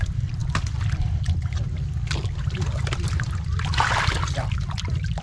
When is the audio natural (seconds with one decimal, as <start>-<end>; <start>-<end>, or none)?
0.0-5.2